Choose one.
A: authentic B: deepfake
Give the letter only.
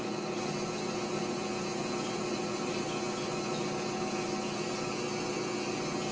A